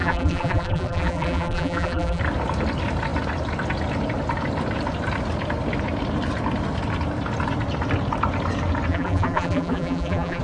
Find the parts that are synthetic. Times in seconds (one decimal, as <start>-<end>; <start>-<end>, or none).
0.0-2.2; 8.9-10.4